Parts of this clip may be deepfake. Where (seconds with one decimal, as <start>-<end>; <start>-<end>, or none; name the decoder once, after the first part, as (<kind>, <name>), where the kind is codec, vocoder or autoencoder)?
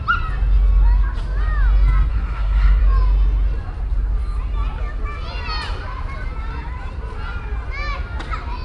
2.1-2.8 (codec, SNAC)